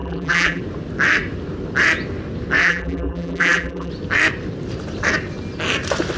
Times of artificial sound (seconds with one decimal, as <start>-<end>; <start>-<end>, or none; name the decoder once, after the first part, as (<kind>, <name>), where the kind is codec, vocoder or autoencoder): 0.0-0.6 (vocoder, BigVGAN v2); 2.6-3.9